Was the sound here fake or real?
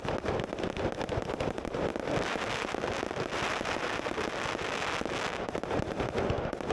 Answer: real